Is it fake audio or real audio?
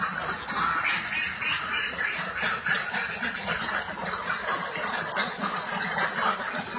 real